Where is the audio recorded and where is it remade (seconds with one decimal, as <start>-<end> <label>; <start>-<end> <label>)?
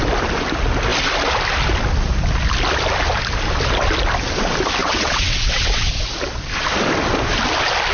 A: 0.0-4.8 recorded; 4.8-5.9 remade; 5.9-7.9 recorded